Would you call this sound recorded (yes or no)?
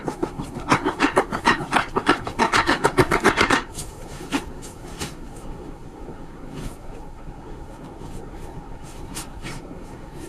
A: no